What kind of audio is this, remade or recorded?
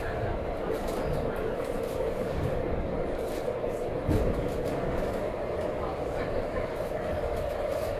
remade